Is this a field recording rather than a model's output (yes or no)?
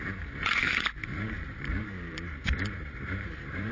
no